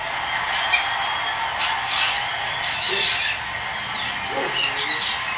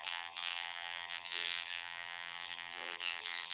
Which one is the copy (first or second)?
second